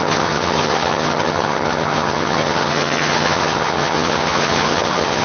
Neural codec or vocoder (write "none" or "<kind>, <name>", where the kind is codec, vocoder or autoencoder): vocoder, HiFi-GAN